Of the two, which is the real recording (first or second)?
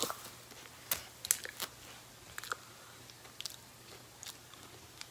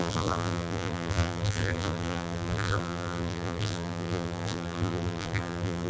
first